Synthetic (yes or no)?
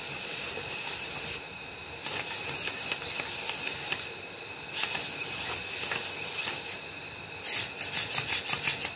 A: no